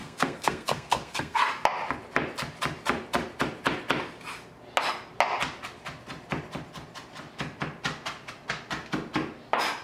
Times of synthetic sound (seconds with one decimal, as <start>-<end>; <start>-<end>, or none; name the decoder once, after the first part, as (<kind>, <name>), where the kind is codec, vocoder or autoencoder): 0.0-1.4 (codec, SNAC)